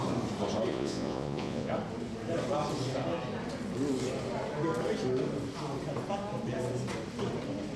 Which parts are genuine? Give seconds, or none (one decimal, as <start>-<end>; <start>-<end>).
0.0-0.7; 1.7-7.8